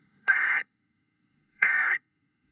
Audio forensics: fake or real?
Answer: fake